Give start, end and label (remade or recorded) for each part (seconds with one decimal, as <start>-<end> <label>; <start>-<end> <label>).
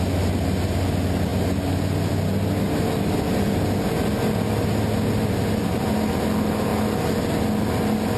0.0-8.2 recorded